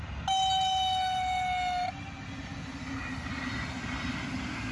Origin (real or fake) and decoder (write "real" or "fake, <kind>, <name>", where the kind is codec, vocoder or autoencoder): real